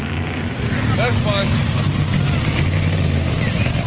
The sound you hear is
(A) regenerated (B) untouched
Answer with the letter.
B